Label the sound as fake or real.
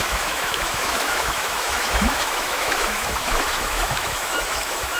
fake